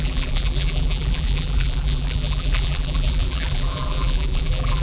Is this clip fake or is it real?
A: fake